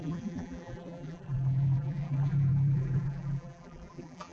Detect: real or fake fake